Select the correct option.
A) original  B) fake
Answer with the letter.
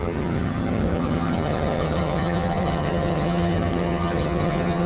B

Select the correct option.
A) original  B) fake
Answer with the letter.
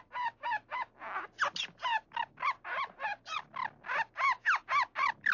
A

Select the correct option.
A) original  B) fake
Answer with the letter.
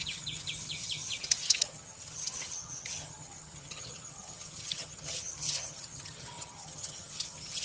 B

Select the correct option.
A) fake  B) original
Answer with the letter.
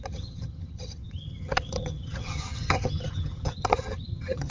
A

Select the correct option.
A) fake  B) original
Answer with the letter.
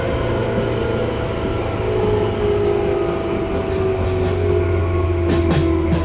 B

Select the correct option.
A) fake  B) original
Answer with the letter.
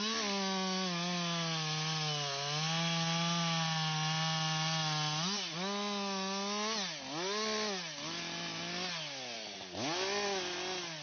B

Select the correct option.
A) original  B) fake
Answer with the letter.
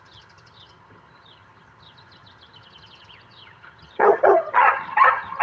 B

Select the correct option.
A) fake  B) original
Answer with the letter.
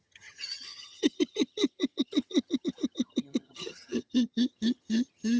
A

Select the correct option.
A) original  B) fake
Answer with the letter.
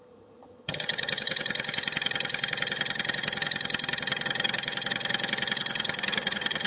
B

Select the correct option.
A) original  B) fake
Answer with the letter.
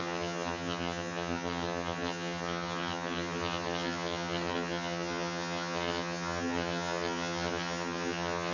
B